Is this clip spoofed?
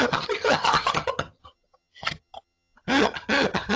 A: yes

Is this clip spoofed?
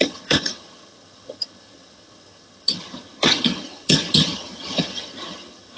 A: yes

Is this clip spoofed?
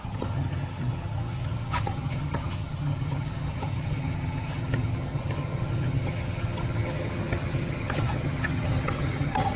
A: yes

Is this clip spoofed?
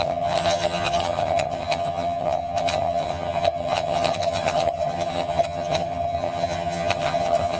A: yes